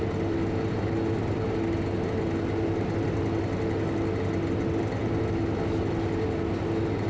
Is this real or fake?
real